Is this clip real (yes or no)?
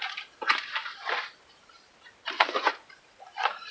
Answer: no